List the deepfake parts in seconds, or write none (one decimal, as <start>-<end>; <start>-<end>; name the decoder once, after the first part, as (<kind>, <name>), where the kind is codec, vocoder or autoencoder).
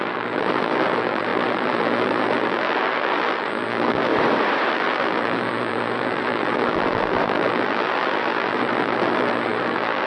0.0-4.1 (vocoder, BigVGAN v2); 4.7-10.1